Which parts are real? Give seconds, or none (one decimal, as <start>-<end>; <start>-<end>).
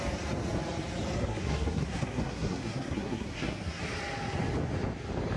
0.0-1.2; 3.8-5.4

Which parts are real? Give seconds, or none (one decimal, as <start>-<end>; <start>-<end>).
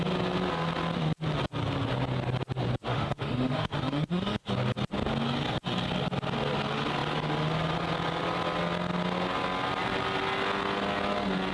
0.0-2.9; 4.5-11.5